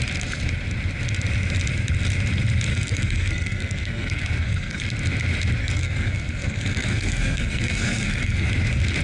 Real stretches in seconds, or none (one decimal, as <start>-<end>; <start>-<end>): 0.0-2.7; 4.8-5.6; 8.5-9.0